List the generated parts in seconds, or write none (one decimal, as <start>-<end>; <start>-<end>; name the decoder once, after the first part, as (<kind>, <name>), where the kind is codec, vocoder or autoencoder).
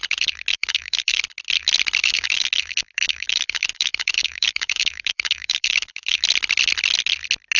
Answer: 0.5-1.2 (autoencoder, DAC-VAE); 2.0-6.2